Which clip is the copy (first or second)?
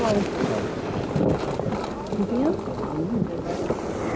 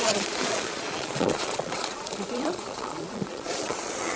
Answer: second